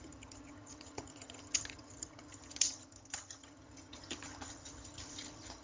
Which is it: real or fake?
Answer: fake